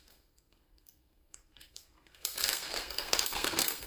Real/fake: fake